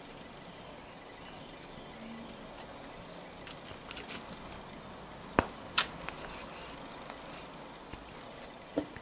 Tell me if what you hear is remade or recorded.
recorded